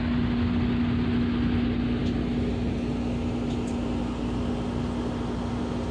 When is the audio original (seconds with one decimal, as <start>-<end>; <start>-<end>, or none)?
0.0-5.9